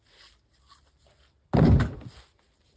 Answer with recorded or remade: recorded